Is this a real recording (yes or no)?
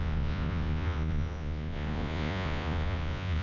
no